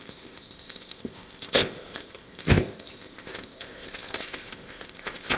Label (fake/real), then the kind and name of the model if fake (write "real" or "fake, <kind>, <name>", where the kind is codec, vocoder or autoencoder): fake, codec, ZipCodec